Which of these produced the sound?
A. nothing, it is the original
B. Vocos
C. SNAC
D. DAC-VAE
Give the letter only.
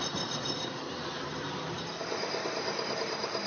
A